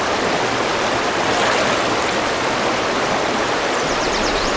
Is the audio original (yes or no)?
yes